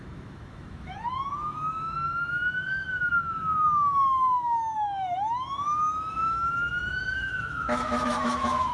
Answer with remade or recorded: remade